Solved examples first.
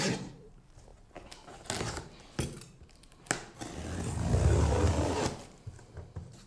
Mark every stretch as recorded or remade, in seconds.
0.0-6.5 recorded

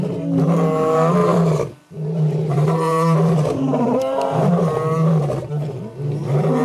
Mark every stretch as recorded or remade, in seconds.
0.0-1.2 recorded; 1.2-5.1 remade; 5.1-6.6 recorded

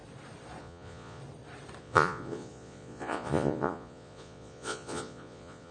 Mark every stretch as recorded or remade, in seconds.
0.0-0.6 recorded; 0.6-1.2 remade; 1.2-1.8 recorded; 1.8-5.7 remade

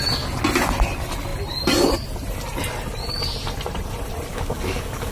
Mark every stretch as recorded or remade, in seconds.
0.0-4.3 recorded; 4.3-5.1 remade